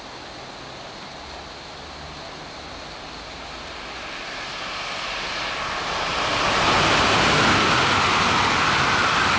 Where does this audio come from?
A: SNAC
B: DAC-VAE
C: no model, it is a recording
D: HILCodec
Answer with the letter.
C